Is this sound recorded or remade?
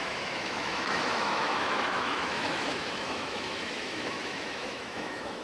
remade